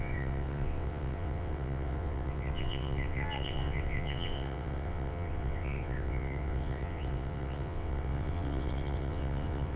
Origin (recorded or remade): remade